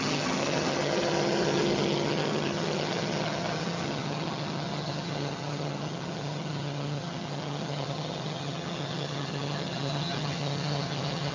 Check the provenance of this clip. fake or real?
fake